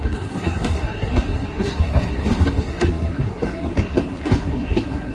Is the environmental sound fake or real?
fake